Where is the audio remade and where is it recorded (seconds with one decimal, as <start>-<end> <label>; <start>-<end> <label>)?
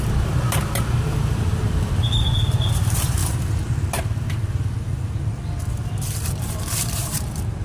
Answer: 0.0-3.2 remade; 3.2-6.4 recorded; 6.4-7.6 remade